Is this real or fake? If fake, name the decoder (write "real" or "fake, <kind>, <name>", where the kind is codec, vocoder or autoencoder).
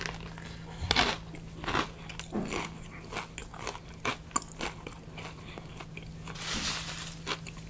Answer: real